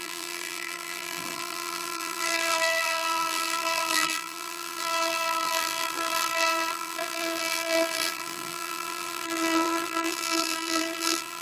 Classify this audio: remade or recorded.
remade